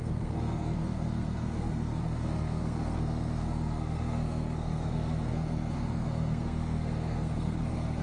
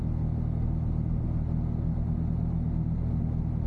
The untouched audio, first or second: second